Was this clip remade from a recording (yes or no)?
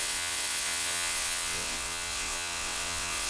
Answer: yes